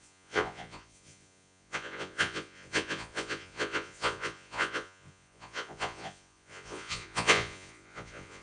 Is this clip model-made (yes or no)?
yes